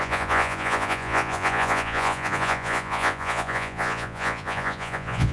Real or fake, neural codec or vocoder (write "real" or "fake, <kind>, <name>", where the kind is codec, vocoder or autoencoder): fake, vocoder, Vocos